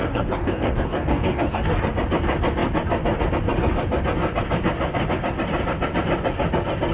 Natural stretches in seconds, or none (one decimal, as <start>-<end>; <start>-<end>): 1.8-6.9